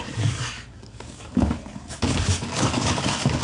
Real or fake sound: fake